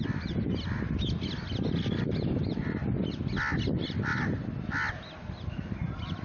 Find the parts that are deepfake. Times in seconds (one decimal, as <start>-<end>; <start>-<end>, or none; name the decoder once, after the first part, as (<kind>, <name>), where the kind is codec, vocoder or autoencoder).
none